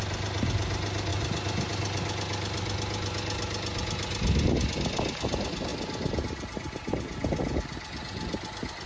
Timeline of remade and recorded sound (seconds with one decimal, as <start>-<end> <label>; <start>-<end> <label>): 0.0-8.9 recorded